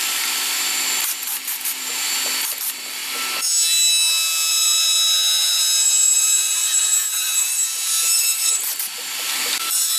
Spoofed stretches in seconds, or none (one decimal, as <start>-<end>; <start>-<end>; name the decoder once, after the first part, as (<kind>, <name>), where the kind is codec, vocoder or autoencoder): 0.0-3.0 (vocoder, BigVGAN v2); 4.5-10.0